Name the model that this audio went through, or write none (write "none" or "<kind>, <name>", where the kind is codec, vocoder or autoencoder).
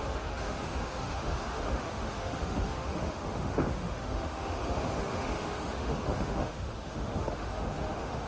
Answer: autoencoder, DAC-VAE